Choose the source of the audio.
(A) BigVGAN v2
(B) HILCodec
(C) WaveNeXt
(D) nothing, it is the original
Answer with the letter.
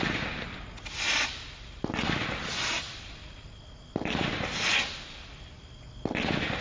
D